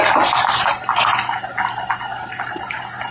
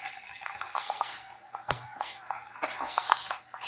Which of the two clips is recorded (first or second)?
first